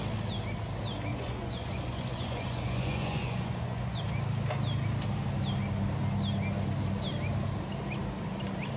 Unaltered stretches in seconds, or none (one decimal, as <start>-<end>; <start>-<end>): 0.0-1.1; 4.0-8.8